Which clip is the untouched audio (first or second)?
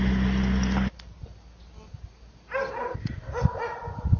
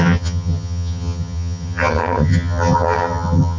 first